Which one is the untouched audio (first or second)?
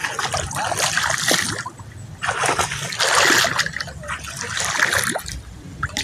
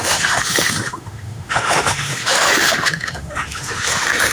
first